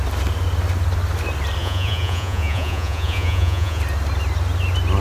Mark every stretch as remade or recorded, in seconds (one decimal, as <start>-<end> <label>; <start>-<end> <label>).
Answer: 0.0-1.6 recorded; 1.6-3.8 remade; 3.8-5.0 recorded